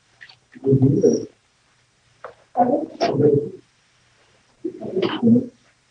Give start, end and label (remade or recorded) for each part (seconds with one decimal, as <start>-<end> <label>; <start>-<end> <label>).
0.0-5.9 remade